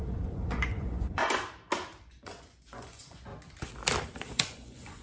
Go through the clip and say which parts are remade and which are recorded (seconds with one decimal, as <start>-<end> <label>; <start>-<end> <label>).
0.0-1.2 remade; 1.2-2.0 recorded; 2.0-3.3 remade; 3.3-4.3 recorded; 4.3-5.0 remade